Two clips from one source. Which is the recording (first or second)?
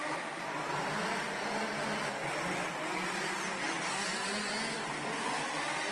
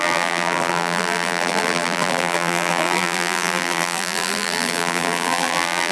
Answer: first